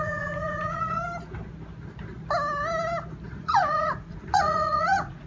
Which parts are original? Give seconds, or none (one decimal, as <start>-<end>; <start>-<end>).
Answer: 1.0-3.3